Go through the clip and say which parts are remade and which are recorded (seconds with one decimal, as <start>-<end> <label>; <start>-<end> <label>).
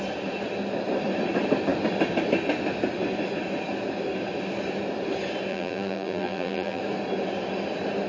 0.0-5.5 recorded; 5.5-6.8 remade; 6.8-8.1 recorded